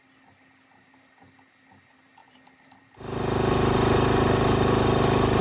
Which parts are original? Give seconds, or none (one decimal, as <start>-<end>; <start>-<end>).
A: 0.0-2.2